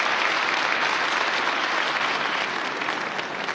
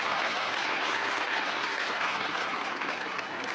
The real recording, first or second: first